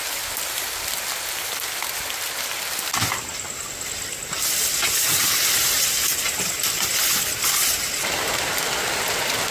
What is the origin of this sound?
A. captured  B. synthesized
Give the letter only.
A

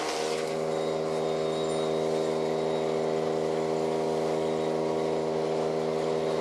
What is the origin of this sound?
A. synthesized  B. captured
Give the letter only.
B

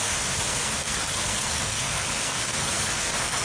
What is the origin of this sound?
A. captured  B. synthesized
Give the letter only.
B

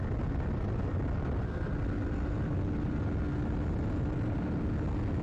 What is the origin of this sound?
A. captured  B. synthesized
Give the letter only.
A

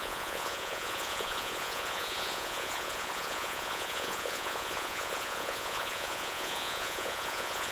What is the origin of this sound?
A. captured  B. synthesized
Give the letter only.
B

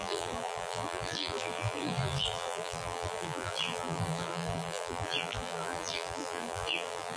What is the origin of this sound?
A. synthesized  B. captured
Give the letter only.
A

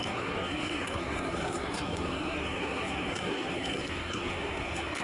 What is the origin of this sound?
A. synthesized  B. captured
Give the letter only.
A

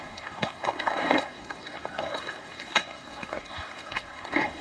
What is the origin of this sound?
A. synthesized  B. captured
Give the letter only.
A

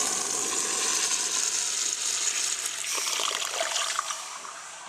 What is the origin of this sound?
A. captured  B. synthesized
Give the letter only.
A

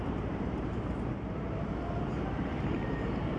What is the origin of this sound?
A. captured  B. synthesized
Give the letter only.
B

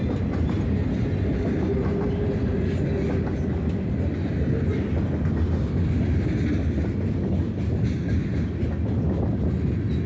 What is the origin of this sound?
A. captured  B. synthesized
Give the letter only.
A